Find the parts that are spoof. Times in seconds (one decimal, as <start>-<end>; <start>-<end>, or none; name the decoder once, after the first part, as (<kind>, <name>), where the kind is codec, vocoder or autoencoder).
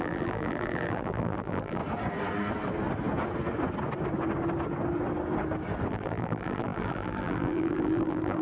0.0-1.8 (vocoder, BigVGAN v2); 5.9-8.4